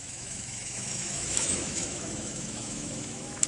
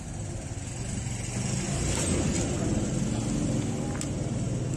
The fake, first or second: first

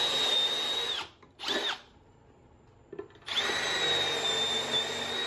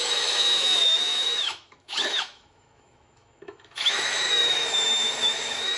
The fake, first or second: second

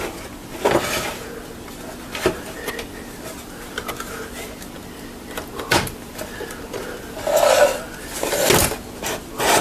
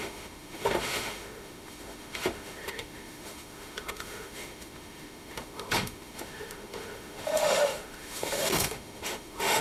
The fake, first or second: second